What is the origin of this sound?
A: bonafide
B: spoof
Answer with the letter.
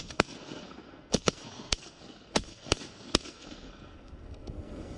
B